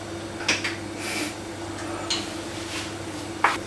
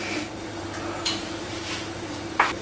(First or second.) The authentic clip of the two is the first